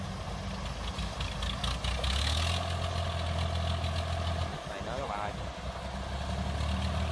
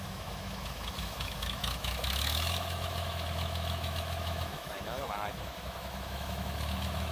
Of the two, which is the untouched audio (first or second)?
first